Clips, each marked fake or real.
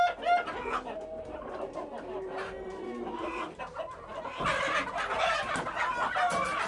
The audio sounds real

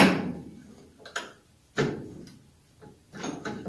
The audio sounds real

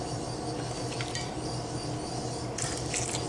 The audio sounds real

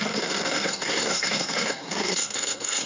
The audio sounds fake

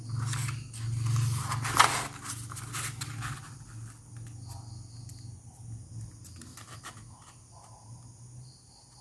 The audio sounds real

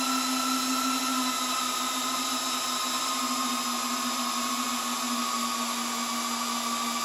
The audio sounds real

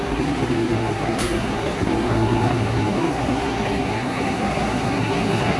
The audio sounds fake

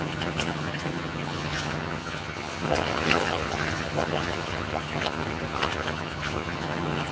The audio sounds fake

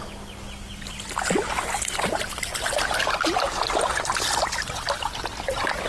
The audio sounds real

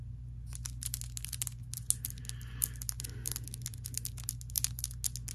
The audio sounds real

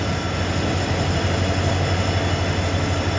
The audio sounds real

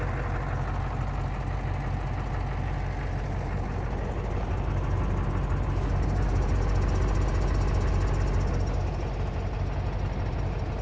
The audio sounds real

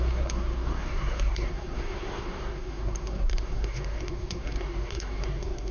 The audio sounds fake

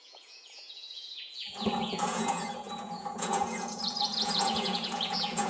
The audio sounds fake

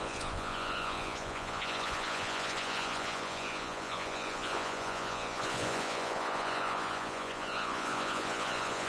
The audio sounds fake